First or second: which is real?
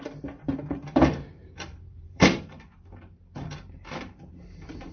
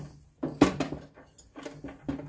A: second